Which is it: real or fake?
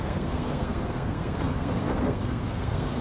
fake